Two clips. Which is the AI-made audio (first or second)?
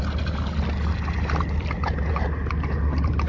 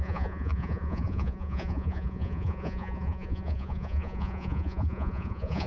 second